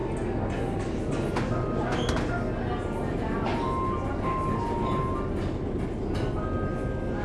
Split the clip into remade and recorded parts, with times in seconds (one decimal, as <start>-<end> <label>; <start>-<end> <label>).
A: 0.0-7.2 recorded